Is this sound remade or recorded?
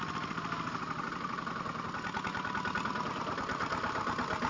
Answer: recorded